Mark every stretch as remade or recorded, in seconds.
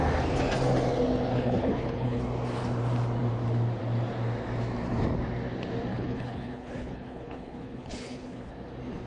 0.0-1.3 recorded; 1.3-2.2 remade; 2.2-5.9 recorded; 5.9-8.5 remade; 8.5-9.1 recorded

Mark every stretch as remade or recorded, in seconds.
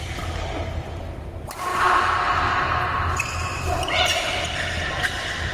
0.0-5.5 recorded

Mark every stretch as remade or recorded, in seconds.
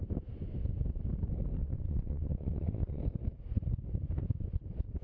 0.0-1.6 recorded; 1.6-3.0 remade; 3.0-5.0 recorded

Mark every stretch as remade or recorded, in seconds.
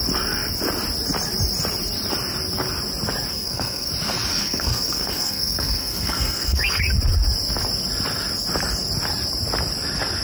0.0-3.3 recorded; 3.3-3.9 remade; 3.9-4.3 recorded; 4.3-6.8 remade; 6.8-10.2 recorded